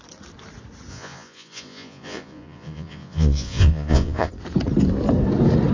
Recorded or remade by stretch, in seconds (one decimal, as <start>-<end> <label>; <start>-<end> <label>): 0.0-0.9 recorded; 0.9-4.3 remade; 4.3-5.7 recorded